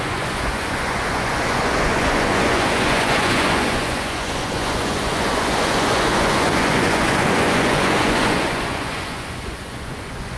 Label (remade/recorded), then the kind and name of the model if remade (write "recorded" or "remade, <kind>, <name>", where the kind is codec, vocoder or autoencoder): remade, vocoder, Vocos